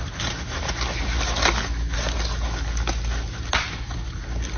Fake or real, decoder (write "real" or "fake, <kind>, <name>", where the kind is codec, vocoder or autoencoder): real